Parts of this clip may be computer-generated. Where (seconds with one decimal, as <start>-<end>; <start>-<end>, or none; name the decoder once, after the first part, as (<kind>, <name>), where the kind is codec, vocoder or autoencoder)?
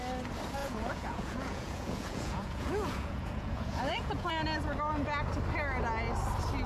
0.6-4.3 (vocoder, Vocos)